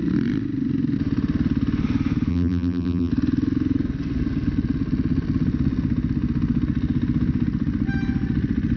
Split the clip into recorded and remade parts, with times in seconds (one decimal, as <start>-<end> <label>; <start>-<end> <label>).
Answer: 0.0-2.3 recorded; 2.3-3.1 remade; 3.1-8.8 recorded